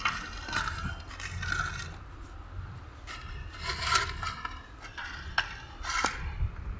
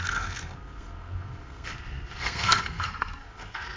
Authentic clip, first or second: first